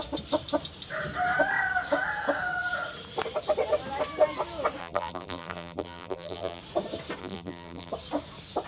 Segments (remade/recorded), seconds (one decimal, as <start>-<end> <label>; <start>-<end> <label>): 0.0-4.8 recorded; 4.8-6.6 remade; 6.6-7.2 recorded; 7.2-7.9 remade; 7.9-8.7 recorded